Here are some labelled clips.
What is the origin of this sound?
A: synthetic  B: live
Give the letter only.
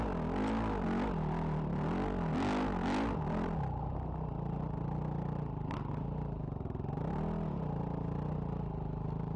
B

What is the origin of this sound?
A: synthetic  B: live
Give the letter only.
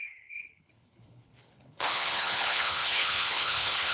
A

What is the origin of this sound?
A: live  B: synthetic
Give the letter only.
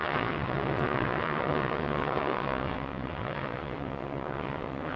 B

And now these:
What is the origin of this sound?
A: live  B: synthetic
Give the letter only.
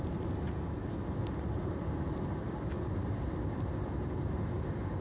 A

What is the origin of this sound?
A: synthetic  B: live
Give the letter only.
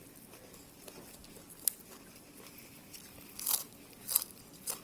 B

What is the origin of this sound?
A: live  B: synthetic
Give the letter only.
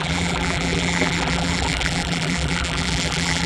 B